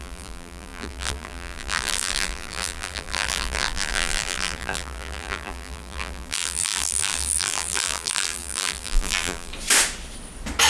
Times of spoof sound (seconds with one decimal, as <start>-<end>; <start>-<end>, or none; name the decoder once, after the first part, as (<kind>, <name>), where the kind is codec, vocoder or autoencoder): 0.0-9.5 (vocoder, BigVGAN v2)